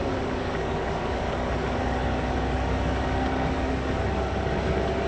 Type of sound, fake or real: fake